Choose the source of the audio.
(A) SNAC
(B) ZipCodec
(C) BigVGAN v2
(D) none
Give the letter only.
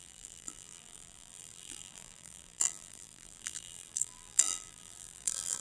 C